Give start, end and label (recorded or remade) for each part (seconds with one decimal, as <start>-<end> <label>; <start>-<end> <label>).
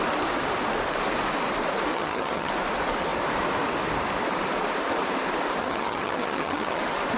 0.0-1.9 recorded; 1.9-2.5 remade; 2.5-5.6 recorded; 5.6-6.8 remade; 6.8-7.2 recorded